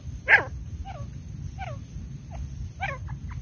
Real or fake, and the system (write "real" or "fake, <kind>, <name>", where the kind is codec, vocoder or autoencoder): real